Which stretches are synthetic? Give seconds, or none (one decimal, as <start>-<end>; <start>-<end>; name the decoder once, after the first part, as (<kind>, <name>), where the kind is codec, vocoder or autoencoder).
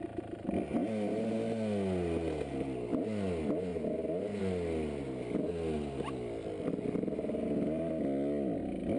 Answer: none